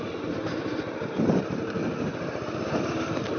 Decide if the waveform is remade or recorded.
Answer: recorded